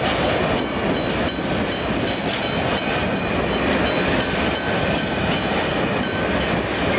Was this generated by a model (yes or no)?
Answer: no